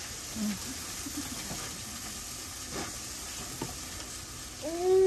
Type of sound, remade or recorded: recorded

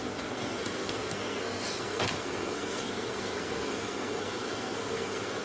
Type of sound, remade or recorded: remade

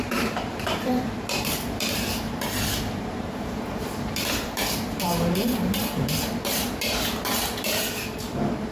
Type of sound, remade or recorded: remade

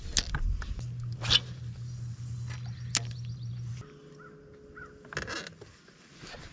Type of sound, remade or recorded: recorded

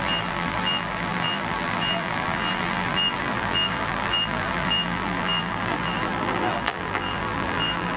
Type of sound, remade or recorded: remade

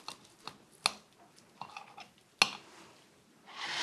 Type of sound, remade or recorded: recorded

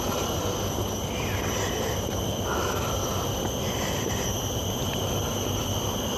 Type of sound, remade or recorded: recorded